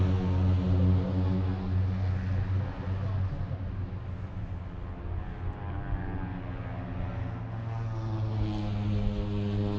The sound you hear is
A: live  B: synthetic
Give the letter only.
A